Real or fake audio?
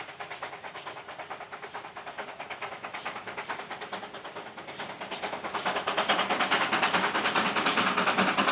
real